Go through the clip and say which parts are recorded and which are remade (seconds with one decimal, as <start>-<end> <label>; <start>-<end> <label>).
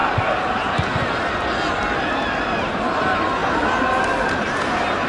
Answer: 0.0-5.1 recorded